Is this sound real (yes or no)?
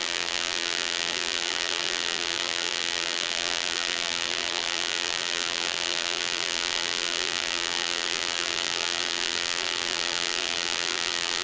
no